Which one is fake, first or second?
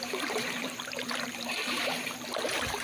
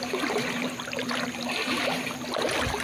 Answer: first